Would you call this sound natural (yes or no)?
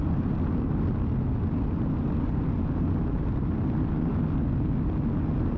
yes